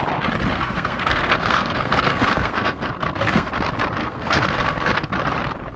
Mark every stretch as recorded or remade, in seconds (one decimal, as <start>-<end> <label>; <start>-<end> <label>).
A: 0.0-0.5 recorded; 0.5-3.5 remade; 3.5-4.0 recorded; 4.0-5.1 remade; 5.1-5.8 recorded